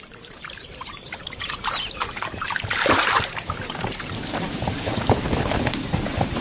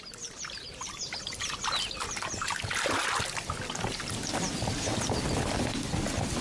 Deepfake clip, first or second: first